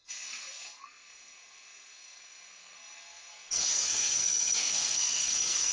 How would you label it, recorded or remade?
remade